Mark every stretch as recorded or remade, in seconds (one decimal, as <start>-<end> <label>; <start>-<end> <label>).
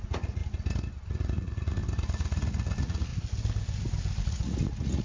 0.0-0.4 remade; 0.4-1.1 recorded; 1.1-1.8 remade; 1.8-2.4 recorded; 2.4-3.1 remade; 3.1-4.2 recorded; 4.2-5.0 remade